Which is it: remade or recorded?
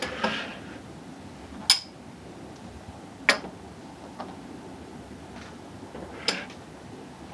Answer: recorded